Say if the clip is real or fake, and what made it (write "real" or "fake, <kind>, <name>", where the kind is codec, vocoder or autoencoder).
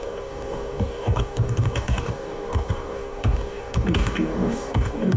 fake, codec, DAC